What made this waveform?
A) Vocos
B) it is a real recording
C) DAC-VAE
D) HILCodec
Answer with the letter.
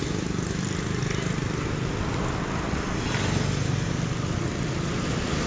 B